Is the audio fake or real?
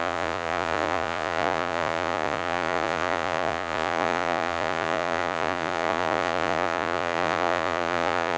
fake